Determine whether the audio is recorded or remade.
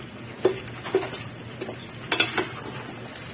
recorded